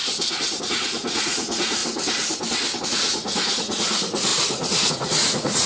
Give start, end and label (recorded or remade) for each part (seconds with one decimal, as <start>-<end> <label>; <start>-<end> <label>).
0.0-0.6 recorded; 0.6-1.8 remade; 1.8-2.8 recorded; 2.8-5.7 remade